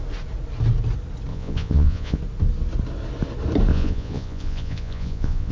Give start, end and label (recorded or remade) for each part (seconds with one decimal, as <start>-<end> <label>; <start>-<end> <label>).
0.0-1.3 recorded; 1.3-2.2 remade; 2.2-3.7 recorded; 3.7-5.5 remade